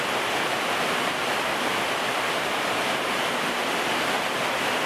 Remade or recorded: recorded